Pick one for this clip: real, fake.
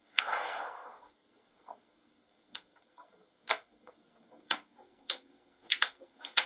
fake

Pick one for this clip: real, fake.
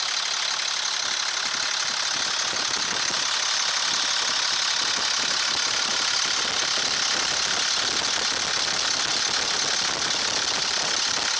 real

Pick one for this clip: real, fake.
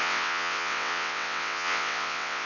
fake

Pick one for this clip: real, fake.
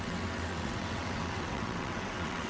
fake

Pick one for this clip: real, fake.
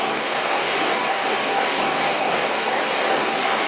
fake